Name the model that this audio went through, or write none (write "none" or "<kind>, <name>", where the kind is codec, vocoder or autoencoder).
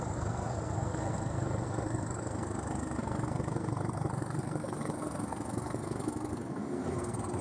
codec, SNAC